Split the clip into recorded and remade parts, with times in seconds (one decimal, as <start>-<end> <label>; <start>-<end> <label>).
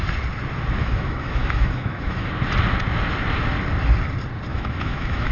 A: 0.0-0.8 recorded; 0.8-2.3 remade; 2.3-4.5 recorded; 4.5-5.3 remade